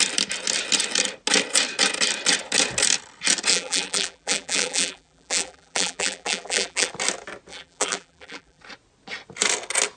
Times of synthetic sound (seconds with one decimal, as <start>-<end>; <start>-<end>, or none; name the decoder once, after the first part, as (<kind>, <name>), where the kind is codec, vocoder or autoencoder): 3.5-6.9 (vocoder, BigVGAN v2); 7.5-8.6